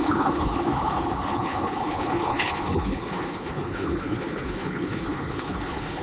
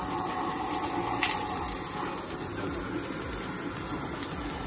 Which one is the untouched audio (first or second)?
second